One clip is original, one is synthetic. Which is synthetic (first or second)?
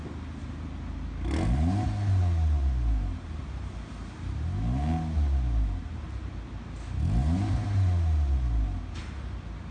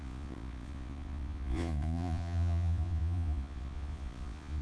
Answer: second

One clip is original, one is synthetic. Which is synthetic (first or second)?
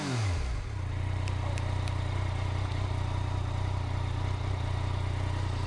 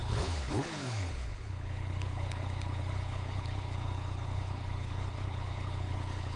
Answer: second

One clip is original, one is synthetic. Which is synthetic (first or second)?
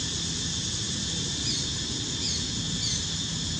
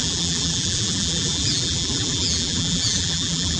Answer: second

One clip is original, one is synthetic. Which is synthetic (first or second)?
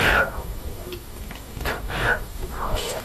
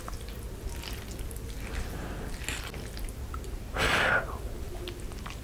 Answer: first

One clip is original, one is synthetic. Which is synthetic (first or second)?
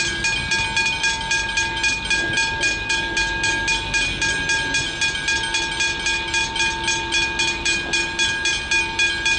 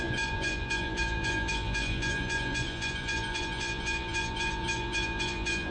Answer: second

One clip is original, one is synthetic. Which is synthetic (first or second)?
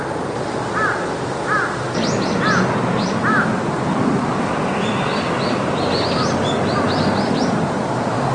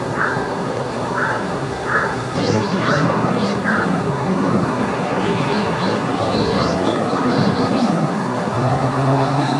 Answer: second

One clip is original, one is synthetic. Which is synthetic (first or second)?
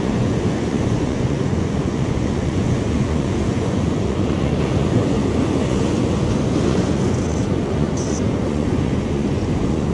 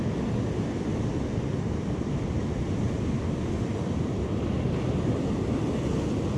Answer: first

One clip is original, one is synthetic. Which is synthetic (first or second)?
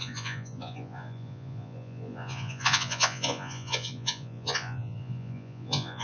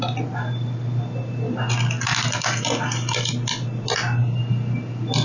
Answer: first